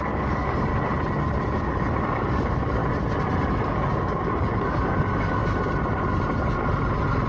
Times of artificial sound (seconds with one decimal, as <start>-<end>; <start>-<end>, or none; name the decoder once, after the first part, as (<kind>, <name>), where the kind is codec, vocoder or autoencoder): 0.0-0.7 (codec, DAC); 1.4-2.8; 3.5-5.4